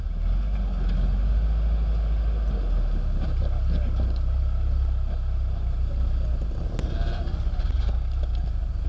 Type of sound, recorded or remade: recorded